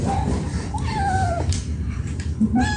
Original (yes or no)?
no